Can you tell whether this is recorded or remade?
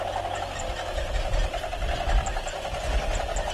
recorded